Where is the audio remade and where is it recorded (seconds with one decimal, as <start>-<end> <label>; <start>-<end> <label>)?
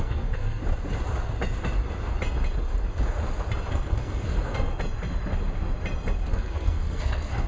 0.0-0.6 remade; 0.6-3.7 recorded; 3.7-4.7 remade; 4.7-6.3 recorded; 6.3-7.5 remade